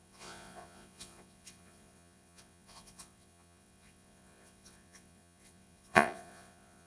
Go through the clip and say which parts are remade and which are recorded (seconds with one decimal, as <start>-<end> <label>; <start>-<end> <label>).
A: 0.0-6.9 remade